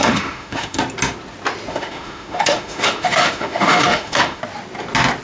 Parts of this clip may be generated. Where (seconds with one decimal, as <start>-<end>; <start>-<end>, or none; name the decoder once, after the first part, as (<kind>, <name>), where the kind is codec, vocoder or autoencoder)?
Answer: 0.0-0.8 (autoencoder, DAC-VAE); 1.7-4.4